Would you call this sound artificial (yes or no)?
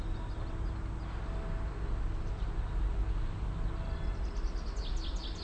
no